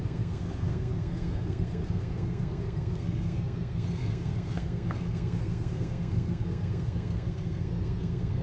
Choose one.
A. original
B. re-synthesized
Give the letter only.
B